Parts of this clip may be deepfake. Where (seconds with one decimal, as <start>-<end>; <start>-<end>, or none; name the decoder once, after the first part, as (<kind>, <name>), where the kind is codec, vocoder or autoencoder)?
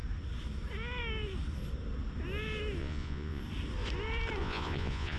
2.8-3.4 (vocoder, Vocos); 4.4-5.2